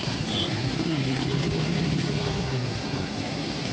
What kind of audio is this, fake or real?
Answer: fake